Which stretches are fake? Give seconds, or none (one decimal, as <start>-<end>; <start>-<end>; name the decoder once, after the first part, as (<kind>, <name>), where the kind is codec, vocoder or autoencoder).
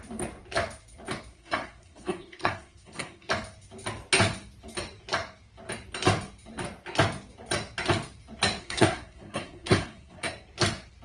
1.3-3.3 (codec, SNAC); 8.6-10.3